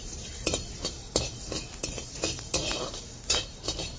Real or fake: fake